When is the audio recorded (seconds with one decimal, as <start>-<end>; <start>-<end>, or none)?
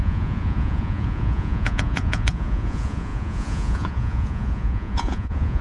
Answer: none